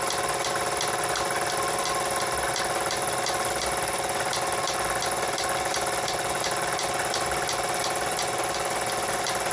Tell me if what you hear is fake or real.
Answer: real